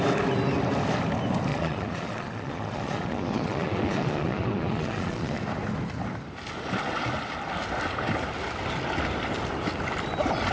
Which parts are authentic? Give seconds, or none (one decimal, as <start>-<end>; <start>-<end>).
0.0-1.5; 5.4-10.5